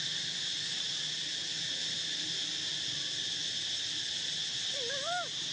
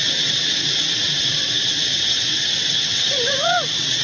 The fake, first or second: second